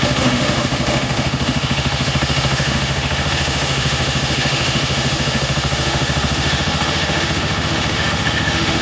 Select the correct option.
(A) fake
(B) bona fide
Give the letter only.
A